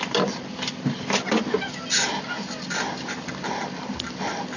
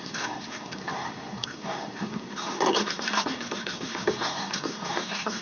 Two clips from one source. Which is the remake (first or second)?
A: second